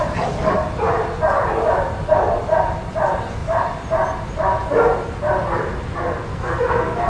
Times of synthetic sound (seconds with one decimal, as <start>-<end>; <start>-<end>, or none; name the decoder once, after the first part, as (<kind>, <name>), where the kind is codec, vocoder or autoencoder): 6.3-7.1 (codec, SNAC)